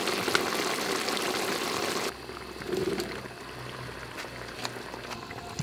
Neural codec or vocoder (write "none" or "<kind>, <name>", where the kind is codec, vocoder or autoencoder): none